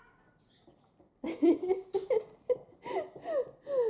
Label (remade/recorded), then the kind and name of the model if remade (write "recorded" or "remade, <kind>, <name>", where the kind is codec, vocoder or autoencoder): recorded